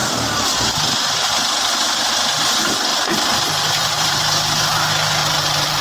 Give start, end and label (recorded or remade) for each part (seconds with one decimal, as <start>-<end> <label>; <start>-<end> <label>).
0.0-2.9 recorded; 2.9-4.2 remade; 4.2-5.2 recorded; 5.2-5.8 remade